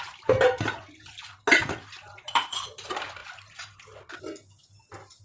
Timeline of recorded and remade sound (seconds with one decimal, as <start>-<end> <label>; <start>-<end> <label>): 0.0-5.2 recorded